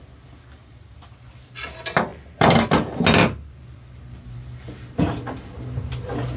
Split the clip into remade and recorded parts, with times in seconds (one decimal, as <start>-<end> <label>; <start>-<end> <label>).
0.0-6.4 recorded